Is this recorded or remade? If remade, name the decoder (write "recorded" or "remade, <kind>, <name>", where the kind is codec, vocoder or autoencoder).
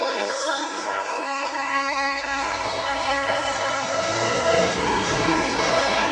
remade, codec, SNAC